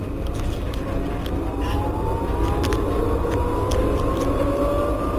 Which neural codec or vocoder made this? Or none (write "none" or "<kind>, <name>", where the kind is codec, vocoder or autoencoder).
none